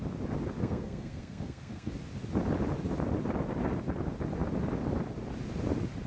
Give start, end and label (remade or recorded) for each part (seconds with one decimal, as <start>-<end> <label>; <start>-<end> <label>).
0.0-0.6 recorded; 0.6-1.9 remade; 1.9-6.1 recorded